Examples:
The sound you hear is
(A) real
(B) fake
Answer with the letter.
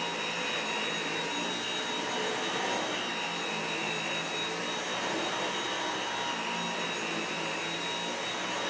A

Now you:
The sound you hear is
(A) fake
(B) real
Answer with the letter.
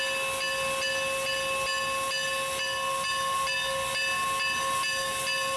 B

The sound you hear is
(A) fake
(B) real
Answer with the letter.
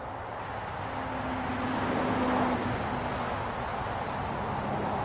B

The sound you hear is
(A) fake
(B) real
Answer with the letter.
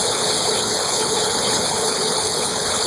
A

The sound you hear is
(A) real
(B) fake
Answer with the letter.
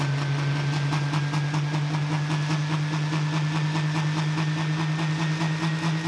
A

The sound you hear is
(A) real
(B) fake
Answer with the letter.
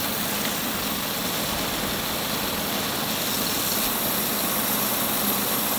A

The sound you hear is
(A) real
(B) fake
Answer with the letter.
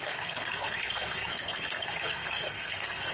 B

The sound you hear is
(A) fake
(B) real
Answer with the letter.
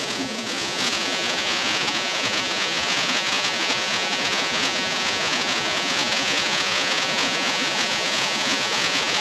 A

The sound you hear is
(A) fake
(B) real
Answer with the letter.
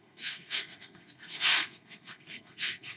A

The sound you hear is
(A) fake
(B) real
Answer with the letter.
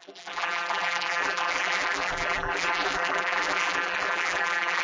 A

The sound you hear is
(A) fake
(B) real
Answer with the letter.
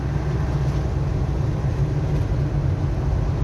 B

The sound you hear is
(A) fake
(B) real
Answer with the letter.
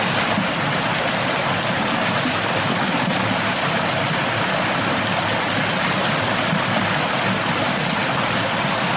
B